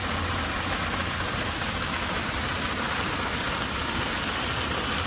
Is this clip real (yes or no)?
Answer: yes